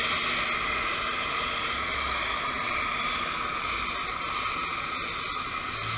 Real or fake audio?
real